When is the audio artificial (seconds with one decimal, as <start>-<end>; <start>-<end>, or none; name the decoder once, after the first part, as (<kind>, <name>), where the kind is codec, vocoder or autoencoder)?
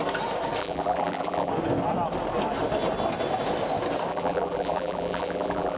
0.6-1.5 (vocoder, BigVGAN v2); 4.1-5.8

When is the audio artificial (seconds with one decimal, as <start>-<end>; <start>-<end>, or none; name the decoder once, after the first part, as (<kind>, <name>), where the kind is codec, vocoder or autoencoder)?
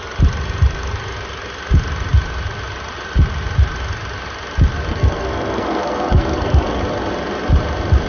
4.9-6.8 (codec, SNAC)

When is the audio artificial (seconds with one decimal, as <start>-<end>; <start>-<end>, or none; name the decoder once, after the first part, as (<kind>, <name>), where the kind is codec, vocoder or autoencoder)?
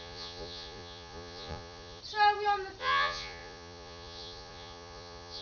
0.0-2.0 (vocoder, Vocos); 2.8-5.4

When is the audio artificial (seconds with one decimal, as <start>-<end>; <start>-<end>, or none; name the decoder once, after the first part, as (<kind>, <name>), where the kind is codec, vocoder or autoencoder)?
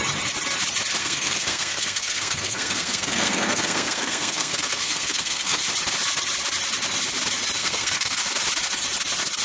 1.0-5.6 (codec, SNAC); 7.6-8.2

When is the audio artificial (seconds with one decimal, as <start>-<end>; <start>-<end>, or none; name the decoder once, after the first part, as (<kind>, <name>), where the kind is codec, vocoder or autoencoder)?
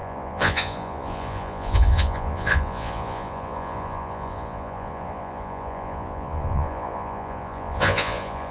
0.0-8.5 (vocoder, Vocos)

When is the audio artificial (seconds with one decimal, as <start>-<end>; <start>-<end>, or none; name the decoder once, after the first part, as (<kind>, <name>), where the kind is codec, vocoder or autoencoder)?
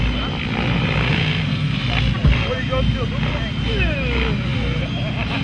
1.0-1.8 (codec, SNAC)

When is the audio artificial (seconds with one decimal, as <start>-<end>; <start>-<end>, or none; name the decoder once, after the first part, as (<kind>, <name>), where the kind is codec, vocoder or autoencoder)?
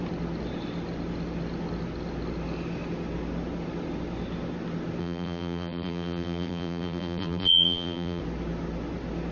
5.0-8.2 (vocoder, BigVGAN v2)